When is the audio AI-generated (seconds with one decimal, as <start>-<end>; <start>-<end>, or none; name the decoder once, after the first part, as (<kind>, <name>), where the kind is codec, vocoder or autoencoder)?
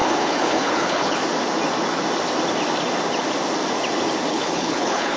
0.0-1.2 (codec, HILCodec); 4.3-5.2